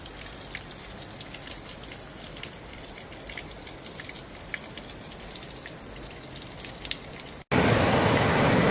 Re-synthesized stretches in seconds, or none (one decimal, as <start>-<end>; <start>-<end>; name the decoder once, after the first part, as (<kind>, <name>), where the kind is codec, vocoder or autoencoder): none